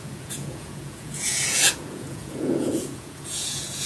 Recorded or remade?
remade